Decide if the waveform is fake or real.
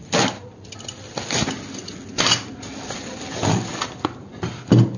real